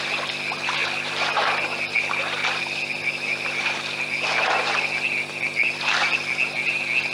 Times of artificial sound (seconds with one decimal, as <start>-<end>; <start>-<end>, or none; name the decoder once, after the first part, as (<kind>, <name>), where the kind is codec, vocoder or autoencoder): 0.8-2.6 (vocoder, BigVGAN v2)